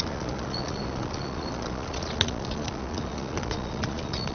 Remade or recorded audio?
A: remade